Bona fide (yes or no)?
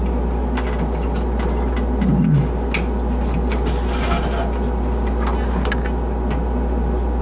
yes